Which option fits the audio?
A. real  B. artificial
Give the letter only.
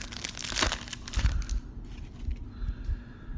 A